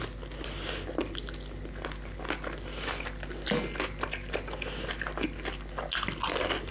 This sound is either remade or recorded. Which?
recorded